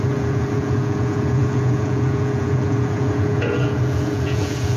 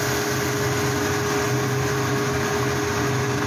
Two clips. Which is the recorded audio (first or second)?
second